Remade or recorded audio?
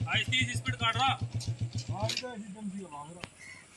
recorded